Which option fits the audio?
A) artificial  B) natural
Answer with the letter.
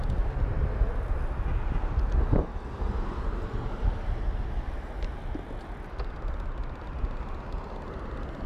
B